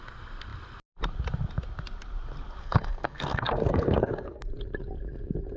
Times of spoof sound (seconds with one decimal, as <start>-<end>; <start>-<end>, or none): 2.6-4.5